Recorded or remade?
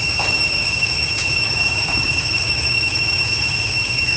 remade